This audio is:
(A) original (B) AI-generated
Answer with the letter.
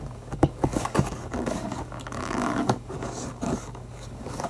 B